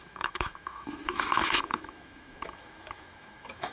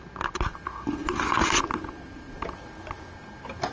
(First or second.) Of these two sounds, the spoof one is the first